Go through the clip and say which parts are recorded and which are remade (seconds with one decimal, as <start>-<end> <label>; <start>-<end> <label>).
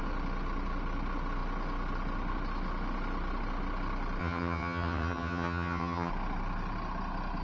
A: 0.0-4.2 recorded; 4.2-6.1 remade; 6.1-7.4 recorded